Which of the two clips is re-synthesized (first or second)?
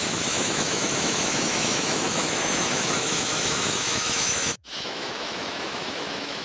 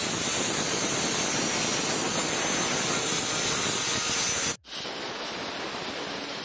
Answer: first